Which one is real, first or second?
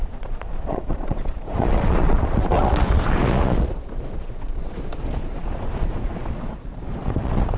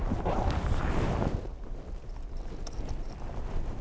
second